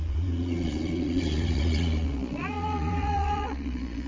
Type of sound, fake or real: fake